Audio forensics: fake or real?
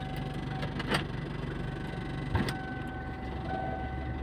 real